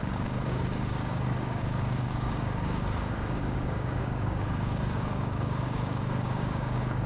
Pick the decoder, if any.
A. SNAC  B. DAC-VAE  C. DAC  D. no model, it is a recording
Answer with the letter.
C